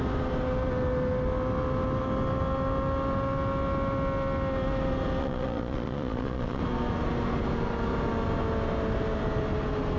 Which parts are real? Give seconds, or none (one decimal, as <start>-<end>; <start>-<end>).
0.0-5.2; 6.6-10.0